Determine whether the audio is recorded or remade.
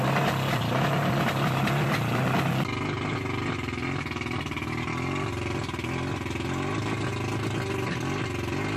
recorded